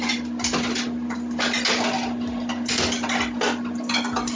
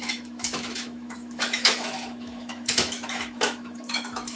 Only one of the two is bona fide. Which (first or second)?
first